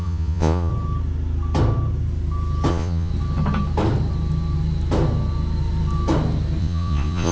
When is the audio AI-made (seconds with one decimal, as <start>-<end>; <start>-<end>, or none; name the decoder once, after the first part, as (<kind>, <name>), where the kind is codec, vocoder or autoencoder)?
0.0-0.7 (vocoder, Vocos); 2.7-3.1; 6.6-7.3